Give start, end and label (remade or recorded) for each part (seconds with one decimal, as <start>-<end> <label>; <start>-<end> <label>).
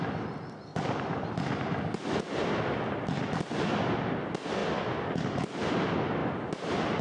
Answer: 0.0-7.0 recorded